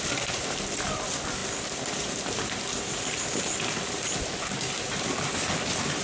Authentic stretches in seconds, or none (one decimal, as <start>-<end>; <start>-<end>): 0.0-6.0